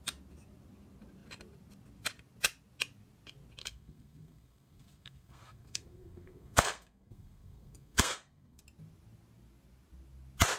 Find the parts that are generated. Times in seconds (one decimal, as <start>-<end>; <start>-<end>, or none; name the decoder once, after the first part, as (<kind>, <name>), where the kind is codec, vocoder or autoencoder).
3.6-8.6 (codec, SNAC)